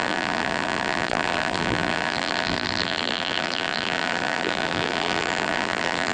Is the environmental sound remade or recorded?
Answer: remade